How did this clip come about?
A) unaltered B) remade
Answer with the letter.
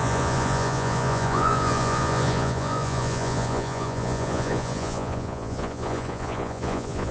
B